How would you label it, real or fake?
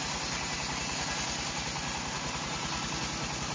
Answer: real